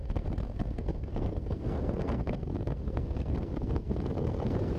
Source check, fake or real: fake